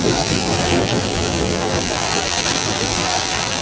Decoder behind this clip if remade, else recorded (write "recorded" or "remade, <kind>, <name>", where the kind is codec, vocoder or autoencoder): remade, vocoder, BigVGAN v2